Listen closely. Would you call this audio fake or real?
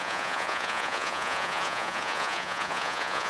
fake